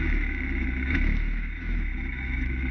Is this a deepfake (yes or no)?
yes